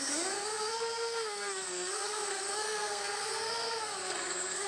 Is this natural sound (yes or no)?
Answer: no